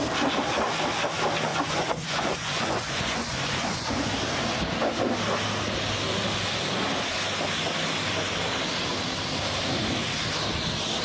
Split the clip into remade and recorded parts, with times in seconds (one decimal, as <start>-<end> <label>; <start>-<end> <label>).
0.0-1.5 recorded; 1.5-4.1 remade; 4.1-11.0 recorded